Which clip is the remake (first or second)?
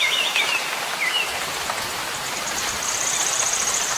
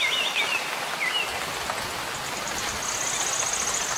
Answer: first